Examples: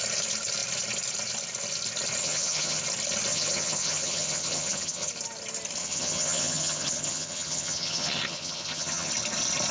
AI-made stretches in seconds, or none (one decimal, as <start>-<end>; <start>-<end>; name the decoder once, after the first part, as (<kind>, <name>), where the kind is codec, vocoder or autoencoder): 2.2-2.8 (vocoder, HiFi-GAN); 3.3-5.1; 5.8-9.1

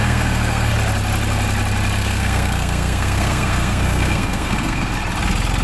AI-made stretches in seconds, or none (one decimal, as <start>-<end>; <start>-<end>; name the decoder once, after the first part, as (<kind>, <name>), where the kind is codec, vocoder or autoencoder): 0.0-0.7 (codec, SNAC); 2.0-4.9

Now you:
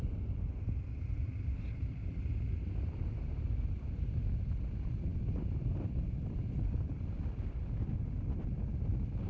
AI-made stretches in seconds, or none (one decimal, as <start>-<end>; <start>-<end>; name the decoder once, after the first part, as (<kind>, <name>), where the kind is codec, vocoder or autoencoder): none

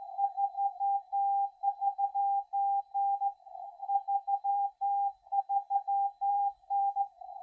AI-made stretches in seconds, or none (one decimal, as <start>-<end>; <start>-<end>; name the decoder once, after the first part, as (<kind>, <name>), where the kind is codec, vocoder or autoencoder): 4.5-5.4 (vocoder, BigVGAN v2); 6.3-6.8

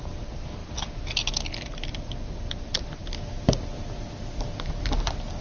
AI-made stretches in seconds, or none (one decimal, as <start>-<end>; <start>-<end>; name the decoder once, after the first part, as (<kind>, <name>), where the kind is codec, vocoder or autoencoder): none